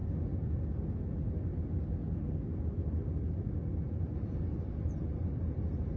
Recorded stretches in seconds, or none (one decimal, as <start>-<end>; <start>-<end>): 0.0-6.0